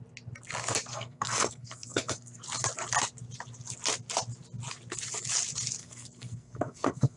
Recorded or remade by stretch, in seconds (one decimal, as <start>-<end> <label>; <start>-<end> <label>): 0.0-0.9 recorded; 0.9-2.4 remade; 2.4-5.8 recorded; 5.8-7.2 remade